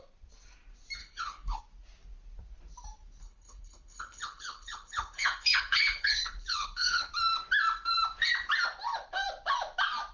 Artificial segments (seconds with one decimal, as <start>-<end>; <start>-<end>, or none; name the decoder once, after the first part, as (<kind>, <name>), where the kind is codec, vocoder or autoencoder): 1.0-1.6 (codec, HILCodec); 3.2-7.1